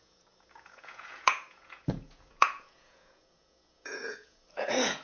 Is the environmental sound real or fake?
fake